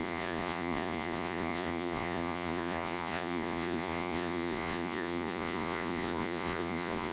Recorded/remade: remade